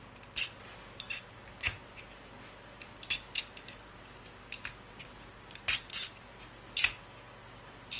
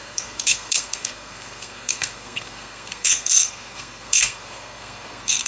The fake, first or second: second